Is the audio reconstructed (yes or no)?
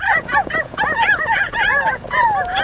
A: yes